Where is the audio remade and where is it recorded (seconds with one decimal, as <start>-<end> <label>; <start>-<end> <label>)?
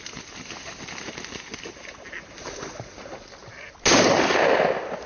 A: 0.0-5.1 recorded